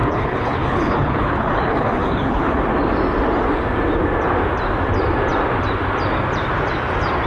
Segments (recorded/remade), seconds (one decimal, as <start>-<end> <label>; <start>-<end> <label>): 0.0-2.6 remade; 2.6-7.3 recorded